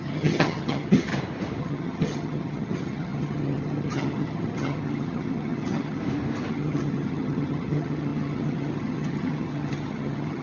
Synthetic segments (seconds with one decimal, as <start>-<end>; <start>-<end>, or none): 0.0-1.1; 1.6-6.0; 6.5-10.4